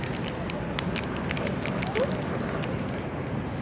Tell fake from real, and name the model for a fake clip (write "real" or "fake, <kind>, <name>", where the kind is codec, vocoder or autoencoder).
real